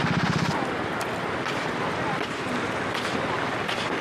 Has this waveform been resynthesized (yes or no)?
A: no